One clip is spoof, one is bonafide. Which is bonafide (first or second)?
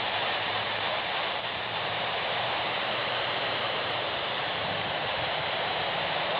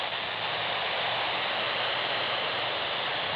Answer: second